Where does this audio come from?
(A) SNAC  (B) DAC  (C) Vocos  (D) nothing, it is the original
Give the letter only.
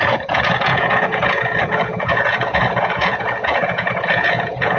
C